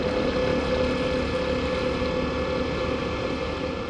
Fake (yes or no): no